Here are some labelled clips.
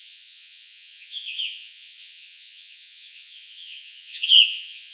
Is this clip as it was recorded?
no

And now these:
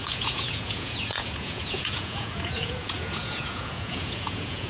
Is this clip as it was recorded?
no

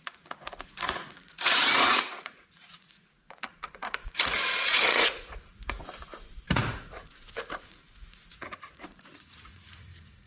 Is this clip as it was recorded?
no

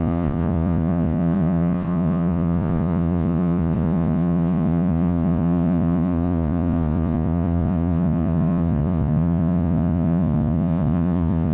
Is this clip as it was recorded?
no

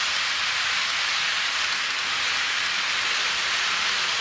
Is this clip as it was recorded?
yes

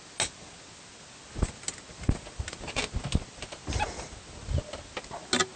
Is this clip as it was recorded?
yes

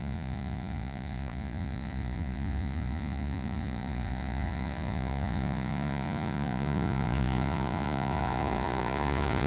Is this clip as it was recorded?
no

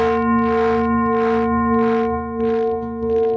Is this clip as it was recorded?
yes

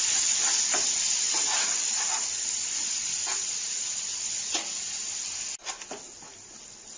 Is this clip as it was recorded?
yes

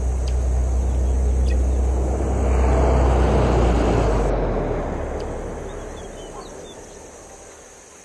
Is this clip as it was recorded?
yes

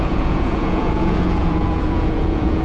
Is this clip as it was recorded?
no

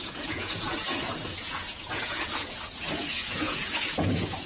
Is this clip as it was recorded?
no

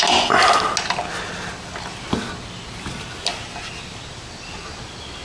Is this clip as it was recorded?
yes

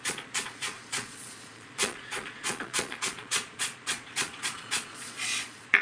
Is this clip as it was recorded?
no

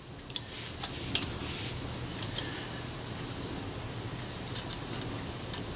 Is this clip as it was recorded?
yes